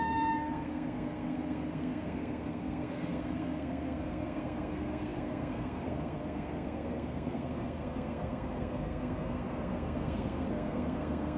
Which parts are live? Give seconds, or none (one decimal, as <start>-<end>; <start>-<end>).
none